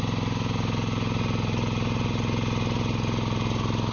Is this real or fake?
real